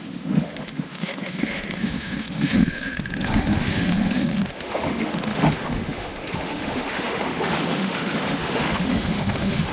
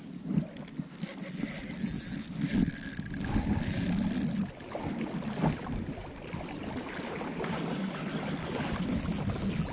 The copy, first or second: first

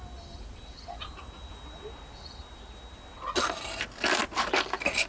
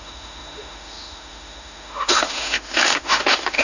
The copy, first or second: second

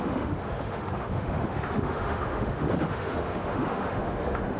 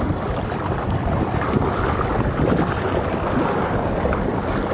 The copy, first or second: first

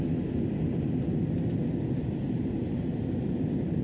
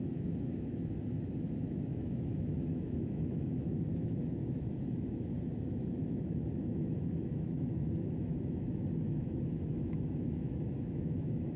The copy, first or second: second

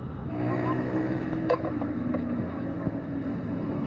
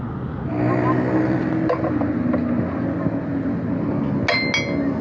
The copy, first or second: first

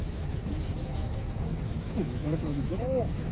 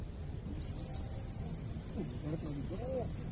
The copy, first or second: first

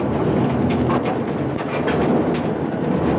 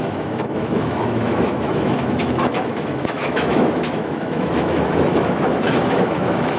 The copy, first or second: second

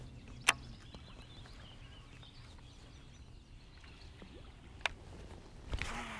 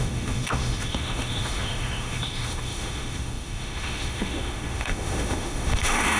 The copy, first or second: second